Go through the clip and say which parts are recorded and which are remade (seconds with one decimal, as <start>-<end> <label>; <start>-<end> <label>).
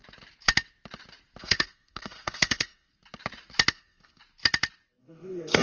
0.0-1.4 recorded; 1.4-3.0 remade; 3.0-3.7 recorded; 3.7-4.2 remade; 4.2-5.0 recorded; 5.0-5.6 remade